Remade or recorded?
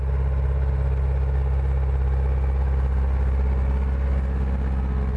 recorded